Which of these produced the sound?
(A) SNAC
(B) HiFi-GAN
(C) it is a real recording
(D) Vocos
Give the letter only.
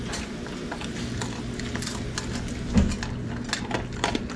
C